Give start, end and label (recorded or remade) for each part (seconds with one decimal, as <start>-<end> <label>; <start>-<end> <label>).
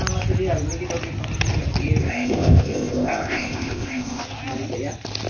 0.0-2.0 recorded; 2.0-4.2 remade; 4.2-5.3 recorded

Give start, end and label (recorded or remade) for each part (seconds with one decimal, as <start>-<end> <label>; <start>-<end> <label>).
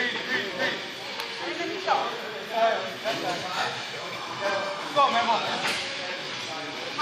0.0-2.0 recorded; 2.0-2.9 remade; 2.9-3.4 recorded; 3.4-6.3 remade; 6.3-7.0 recorded